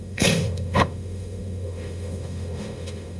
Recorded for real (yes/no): no